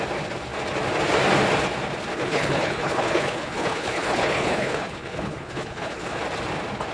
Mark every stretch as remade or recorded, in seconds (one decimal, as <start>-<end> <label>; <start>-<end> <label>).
0.0-2.1 recorded; 2.1-6.2 remade; 6.2-6.9 recorded